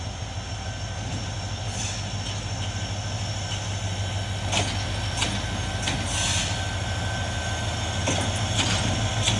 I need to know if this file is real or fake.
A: real